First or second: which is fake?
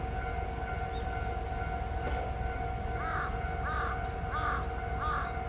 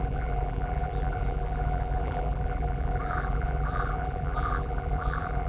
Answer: second